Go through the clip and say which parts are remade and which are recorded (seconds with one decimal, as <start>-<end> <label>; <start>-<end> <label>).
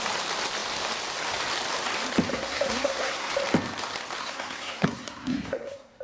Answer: 0.0-2.3 recorded; 2.3-3.3 remade; 3.3-4.2 recorded; 4.2-6.0 remade